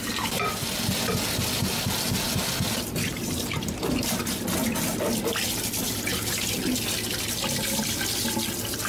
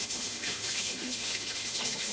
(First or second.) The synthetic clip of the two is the second